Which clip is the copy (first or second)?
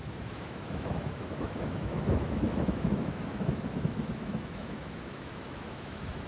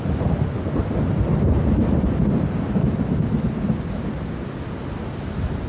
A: first